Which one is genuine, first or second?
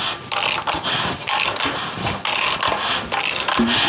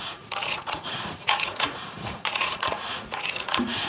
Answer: first